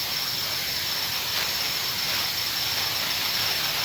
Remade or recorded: recorded